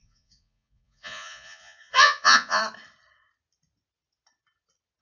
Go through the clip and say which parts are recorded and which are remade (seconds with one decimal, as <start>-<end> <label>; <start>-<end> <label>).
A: 0.0-2.6 remade; 2.6-5.0 recorded